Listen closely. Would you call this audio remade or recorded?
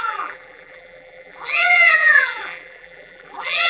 remade